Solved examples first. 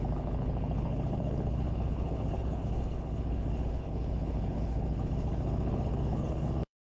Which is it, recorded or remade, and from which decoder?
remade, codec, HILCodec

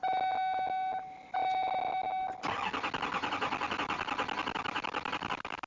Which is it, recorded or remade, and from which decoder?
recorded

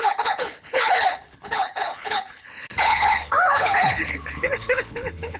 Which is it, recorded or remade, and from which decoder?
remade, codec, HILCodec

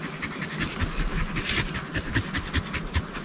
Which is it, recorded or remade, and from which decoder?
recorded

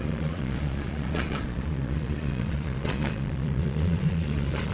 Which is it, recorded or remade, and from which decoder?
remade, vocoder, Vocos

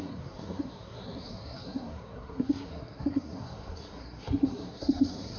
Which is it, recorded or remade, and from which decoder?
remade, codec, SNAC